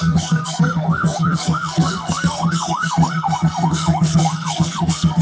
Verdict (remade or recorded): remade